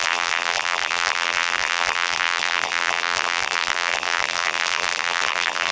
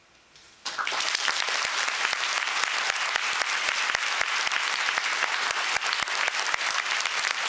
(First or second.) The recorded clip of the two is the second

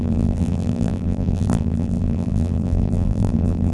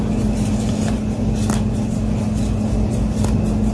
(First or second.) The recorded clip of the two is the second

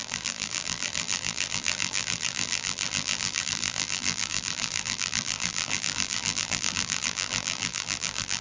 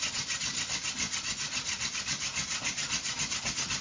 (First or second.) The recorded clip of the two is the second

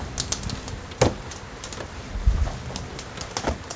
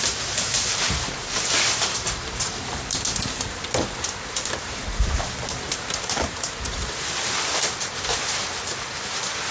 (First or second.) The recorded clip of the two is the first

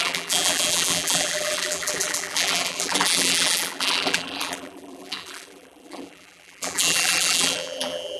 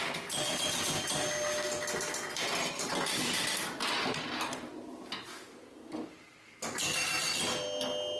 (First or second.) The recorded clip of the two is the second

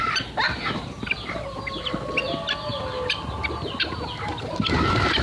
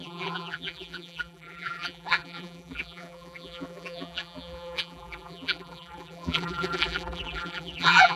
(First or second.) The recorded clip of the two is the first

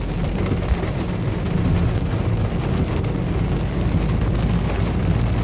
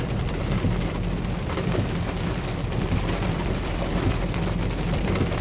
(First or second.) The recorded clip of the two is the first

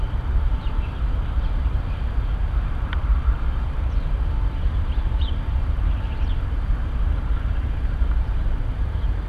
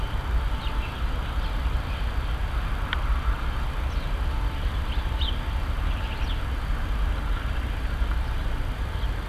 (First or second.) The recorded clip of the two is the second